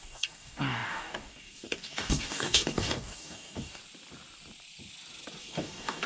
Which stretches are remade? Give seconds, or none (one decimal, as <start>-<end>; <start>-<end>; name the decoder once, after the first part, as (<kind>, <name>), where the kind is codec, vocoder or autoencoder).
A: 0.0-3.8 (codec, DAC); 5.4-6.1